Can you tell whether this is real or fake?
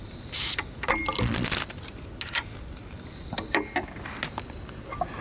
real